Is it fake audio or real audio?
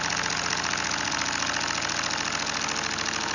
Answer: real